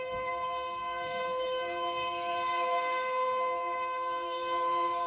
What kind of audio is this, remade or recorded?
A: remade